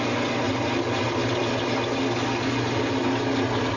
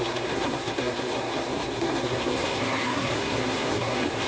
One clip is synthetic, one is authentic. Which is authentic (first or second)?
first